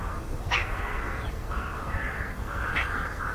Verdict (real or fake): fake